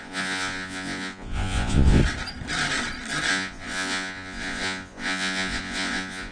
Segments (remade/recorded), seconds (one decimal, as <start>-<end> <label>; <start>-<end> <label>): 0.0-2.0 remade; 2.0-3.3 recorded; 3.3-6.3 remade